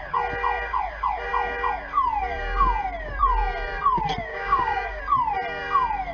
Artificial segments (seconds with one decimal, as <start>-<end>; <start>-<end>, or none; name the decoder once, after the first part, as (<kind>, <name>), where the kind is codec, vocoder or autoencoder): 4.3-5.0 (codec, DAC)